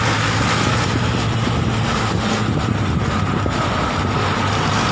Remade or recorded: recorded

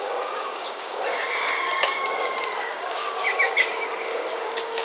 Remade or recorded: remade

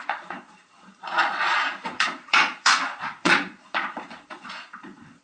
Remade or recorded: remade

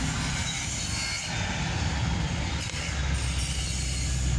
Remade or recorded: recorded